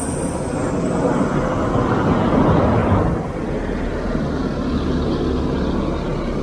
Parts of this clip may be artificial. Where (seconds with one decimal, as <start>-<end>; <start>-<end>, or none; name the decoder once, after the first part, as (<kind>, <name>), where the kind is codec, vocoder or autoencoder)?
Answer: 2.8-3.5 (vocoder, BigVGAN v2)